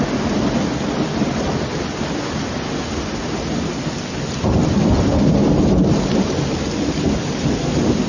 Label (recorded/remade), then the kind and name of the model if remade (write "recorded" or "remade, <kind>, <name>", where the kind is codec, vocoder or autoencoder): recorded